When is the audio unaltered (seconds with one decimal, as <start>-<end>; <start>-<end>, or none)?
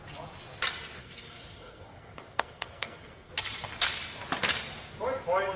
0.0-1.0; 3.3-5.6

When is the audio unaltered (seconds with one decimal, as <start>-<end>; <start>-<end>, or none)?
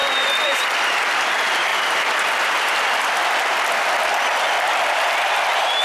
none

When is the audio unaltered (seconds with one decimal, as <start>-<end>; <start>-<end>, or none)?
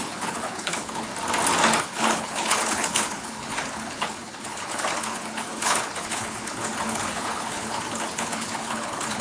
1.1-1.8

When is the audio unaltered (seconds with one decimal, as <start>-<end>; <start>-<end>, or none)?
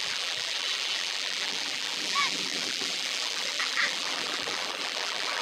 none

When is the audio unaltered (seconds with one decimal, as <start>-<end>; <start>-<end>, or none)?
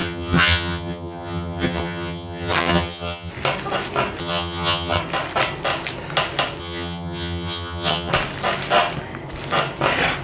3.3-4.2; 5.0-6.6; 8.1-10.2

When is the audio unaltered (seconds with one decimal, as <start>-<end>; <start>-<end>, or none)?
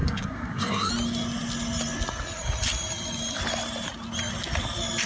0.9-5.1